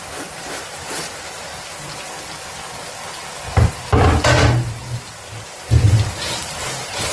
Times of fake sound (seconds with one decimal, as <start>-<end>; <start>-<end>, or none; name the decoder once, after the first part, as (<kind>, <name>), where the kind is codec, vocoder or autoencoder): 0.0-1.5 (vocoder, BigVGAN v2); 4.7-7.1